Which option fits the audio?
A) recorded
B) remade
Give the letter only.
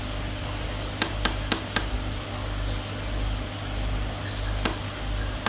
A